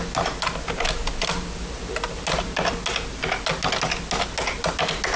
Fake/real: real